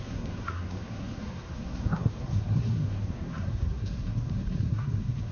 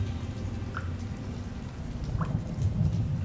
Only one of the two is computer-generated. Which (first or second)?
first